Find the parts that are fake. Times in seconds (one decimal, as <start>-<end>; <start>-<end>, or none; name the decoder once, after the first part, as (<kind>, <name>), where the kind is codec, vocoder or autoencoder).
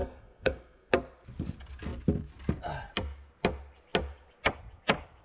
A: 0.0-0.9 (codec, SNAC)